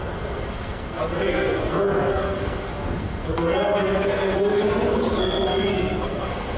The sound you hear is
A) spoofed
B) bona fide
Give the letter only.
A